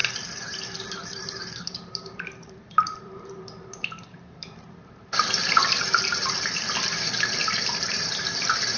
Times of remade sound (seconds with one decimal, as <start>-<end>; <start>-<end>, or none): 1.3-8.8